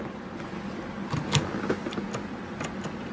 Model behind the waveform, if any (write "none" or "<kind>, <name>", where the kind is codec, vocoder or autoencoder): none